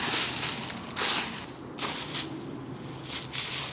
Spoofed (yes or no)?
no